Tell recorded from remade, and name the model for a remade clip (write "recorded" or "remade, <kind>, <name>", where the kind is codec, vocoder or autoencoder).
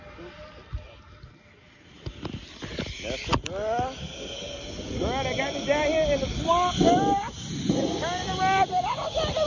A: recorded